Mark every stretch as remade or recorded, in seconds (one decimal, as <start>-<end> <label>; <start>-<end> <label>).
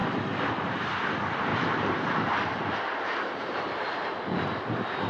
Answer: 0.0-0.9 remade; 0.9-1.5 recorded; 1.5-4.6 remade; 4.6-5.1 recorded